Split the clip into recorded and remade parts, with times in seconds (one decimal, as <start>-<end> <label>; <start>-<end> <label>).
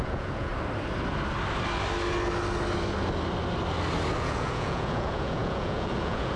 0.0-0.5 remade; 0.5-4.2 recorded; 4.2-6.4 remade